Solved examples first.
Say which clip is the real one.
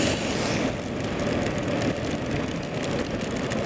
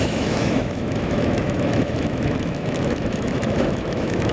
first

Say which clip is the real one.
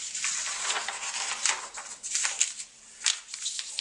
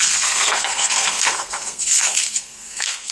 first